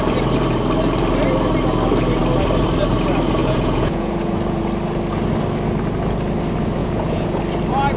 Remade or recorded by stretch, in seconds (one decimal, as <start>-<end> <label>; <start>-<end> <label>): 0.0-3.4 recorded; 3.4-4.6 remade; 4.6-6.8 recorded; 6.8-7.4 remade; 7.4-8.0 recorded